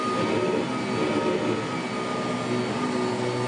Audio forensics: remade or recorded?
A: recorded